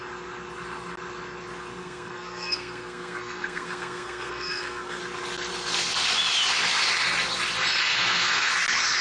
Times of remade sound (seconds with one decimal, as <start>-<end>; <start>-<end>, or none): 1.8-5.0; 7.8-8.5